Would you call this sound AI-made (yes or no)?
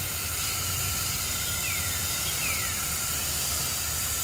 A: yes